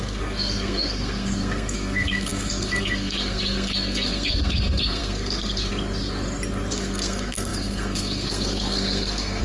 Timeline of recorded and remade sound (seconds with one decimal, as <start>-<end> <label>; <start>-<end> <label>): 0.0-5.7 remade; 5.7-6.7 recorded; 6.7-9.4 remade